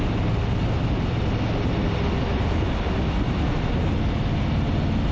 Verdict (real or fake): real